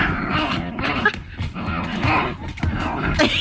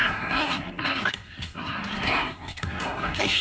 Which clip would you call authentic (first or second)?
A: first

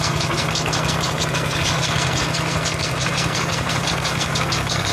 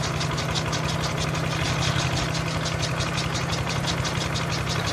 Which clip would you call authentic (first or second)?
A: second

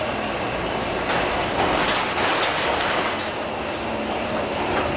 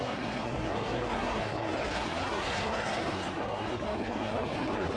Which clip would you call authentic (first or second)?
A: first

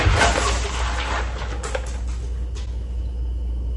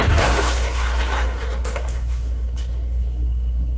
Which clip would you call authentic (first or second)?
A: first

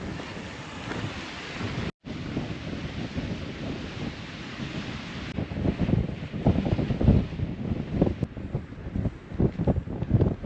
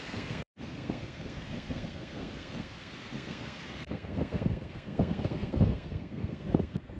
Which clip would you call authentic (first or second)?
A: first